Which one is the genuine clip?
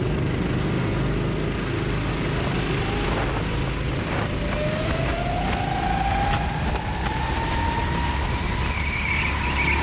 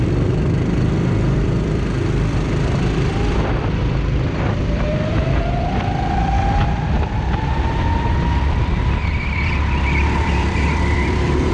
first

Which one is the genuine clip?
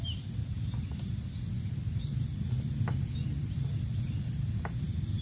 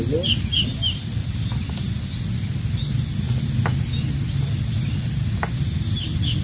second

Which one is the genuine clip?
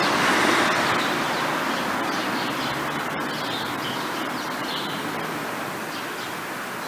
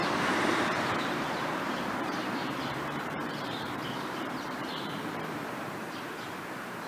first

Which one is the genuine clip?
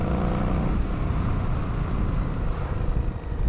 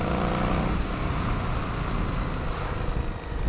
second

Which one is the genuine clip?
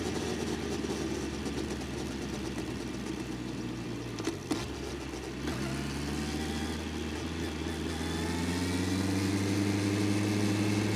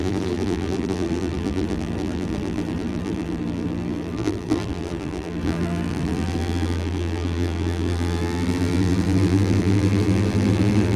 first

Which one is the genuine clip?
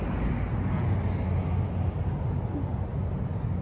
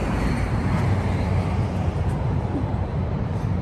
first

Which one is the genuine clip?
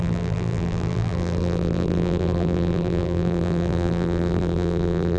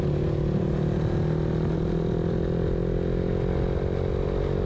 second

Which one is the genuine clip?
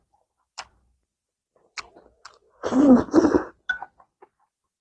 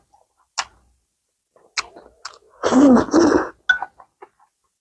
second